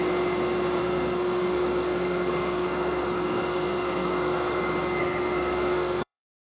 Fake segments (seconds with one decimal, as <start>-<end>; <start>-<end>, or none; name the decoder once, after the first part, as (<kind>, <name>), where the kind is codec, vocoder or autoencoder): 0.8-4.6 (codec, SNAC); 5.0-6.4